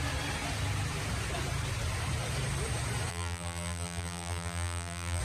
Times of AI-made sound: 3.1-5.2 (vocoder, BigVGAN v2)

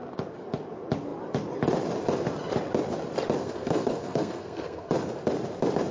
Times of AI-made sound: 3.4-4.9 (codec, SNAC)

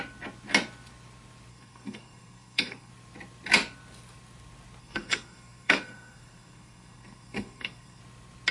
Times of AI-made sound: 1.5-2.9 (codec, SNAC); 4.8-8.0

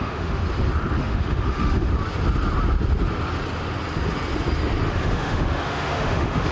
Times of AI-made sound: 0.0-0.4 (autoencoder, DAC-VAE); 1.0-1.9; 4.9-6.5